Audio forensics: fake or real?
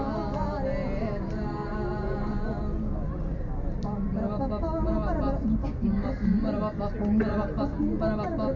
real